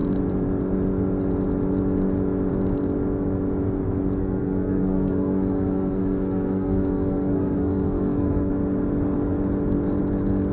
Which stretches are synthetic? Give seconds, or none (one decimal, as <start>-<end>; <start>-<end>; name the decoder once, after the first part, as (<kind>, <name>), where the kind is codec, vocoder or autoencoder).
4.2-8.5 (codec, SNAC)

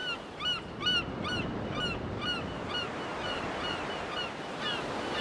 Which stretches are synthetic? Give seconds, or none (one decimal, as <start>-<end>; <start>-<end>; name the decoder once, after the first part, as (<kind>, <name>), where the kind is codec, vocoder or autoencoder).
none